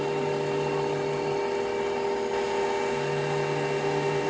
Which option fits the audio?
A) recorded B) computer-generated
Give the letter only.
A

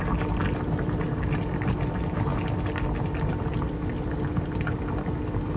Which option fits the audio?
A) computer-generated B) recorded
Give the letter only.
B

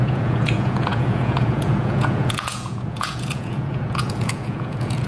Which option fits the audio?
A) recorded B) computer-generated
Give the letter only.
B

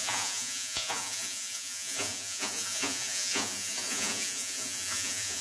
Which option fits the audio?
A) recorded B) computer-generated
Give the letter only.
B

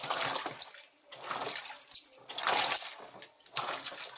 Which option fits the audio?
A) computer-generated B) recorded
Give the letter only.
B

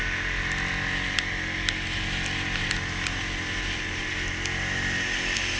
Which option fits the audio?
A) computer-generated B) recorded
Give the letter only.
B